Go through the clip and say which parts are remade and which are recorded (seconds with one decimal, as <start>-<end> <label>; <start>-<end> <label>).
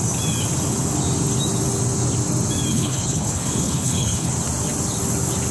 0.0-2.7 recorded; 2.7-4.3 remade; 4.3-5.5 recorded